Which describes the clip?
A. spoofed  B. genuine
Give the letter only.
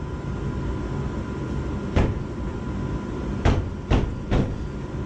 B